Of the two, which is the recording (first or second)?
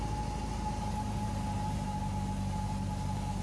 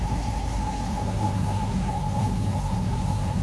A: first